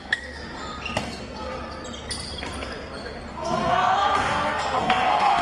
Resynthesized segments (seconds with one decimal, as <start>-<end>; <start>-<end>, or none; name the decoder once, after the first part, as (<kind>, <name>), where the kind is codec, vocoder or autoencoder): 0.0-0.5 (codec, SNAC); 1.0-1.5; 3.3-5.4